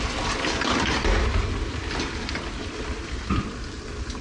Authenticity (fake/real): real